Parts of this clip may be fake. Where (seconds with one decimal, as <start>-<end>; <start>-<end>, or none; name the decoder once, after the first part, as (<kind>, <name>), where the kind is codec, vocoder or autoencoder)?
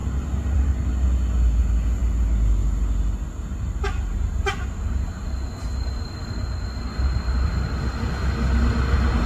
0.0-0.9 (vocoder, BigVGAN v2)